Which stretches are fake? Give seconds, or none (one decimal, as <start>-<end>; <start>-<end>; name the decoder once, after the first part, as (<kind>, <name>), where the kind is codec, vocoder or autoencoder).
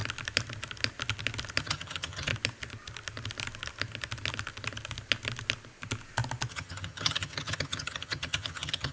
1.6-2.3 (vocoder, HiFi-GAN); 6.5-8.9